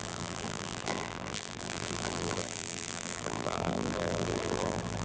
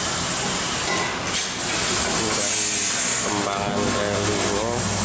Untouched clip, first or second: second